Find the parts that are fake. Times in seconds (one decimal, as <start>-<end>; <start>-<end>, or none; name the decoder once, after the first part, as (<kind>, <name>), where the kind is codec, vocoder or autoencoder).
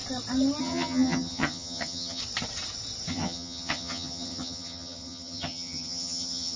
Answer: 0.6-2.2 (vocoder, HiFi-GAN); 3.1-6.6